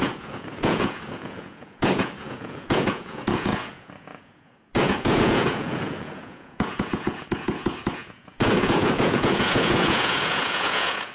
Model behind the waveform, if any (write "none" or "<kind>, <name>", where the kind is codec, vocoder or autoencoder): vocoder, Vocos